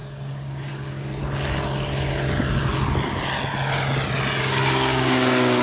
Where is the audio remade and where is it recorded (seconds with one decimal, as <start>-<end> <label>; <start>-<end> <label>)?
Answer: 0.0-1.2 remade; 1.2-4.4 recorded; 4.4-5.6 remade

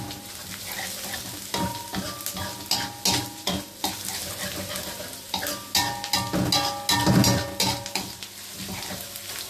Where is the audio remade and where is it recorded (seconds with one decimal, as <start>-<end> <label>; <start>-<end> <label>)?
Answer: 0.0-9.5 recorded

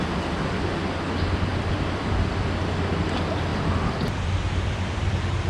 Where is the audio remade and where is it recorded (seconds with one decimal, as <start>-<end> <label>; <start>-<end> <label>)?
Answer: 0.0-1.5 recorded; 1.5-2.1 remade; 2.1-3.5 recorded; 3.5-5.5 remade

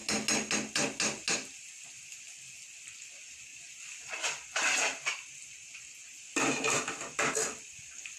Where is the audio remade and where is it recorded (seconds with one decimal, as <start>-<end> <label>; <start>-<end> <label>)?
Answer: 0.0-3.5 recorded; 3.5-8.2 remade